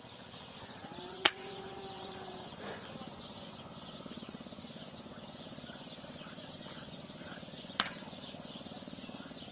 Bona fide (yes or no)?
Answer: no